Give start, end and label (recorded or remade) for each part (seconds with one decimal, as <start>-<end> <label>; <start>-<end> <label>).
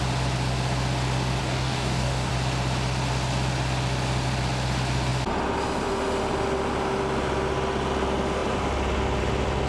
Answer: 0.0-1.4 recorded; 1.4-2.3 remade; 2.3-9.7 recorded